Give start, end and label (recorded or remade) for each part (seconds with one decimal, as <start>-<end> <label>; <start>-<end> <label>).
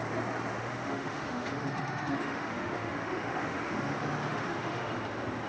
0.0-0.6 recorded; 0.6-3.9 remade; 3.9-4.3 recorded; 4.3-4.9 remade; 4.9-5.5 recorded